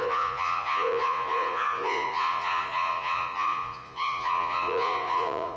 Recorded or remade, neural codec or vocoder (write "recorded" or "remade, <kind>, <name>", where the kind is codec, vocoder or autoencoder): remade, vocoder, Vocos